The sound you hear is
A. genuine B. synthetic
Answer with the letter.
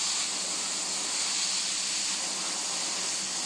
A